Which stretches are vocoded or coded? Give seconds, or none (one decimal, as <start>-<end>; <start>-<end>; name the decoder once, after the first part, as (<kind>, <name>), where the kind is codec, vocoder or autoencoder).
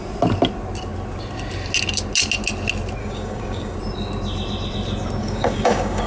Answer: 3.0-3.8 (codec, DAC); 5.2-6.1